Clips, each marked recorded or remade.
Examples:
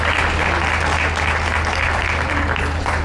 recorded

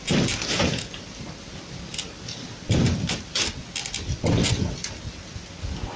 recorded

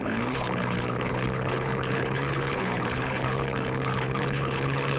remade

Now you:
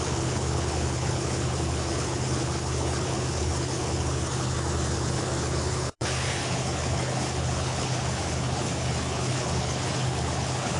remade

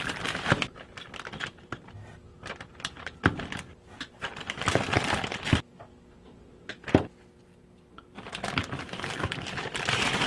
recorded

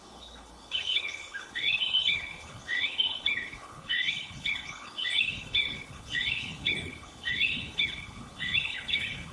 remade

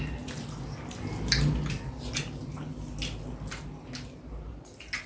recorded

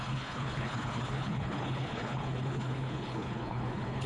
remade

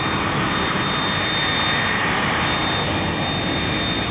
recorded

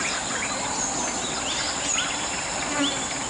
recorded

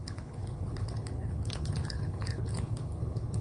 remade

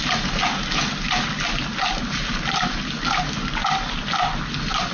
recorded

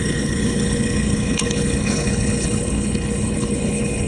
remade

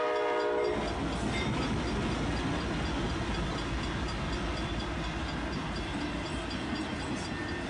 recorded